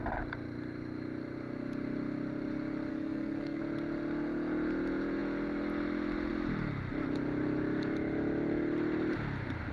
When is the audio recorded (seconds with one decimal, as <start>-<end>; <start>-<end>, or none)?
0.0-2.9; 3.6-9.7